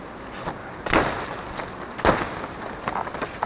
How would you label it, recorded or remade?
recorded